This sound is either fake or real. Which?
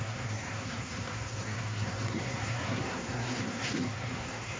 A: fake